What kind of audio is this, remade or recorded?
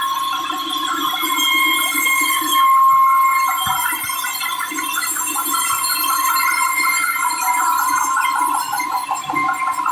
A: recorded